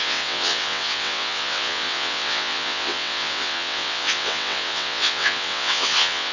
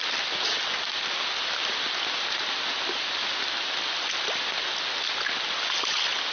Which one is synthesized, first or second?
first